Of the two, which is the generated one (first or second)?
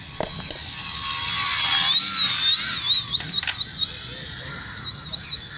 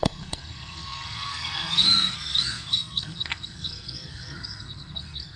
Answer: second